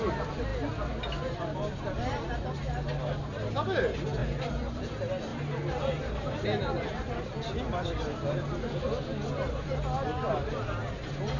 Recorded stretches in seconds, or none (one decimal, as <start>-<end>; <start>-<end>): 0.0-5.3; 7.2-11.4